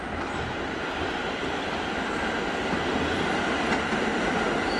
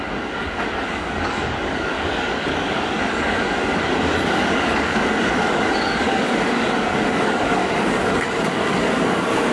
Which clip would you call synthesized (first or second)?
second